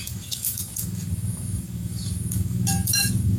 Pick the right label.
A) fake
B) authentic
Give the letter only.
A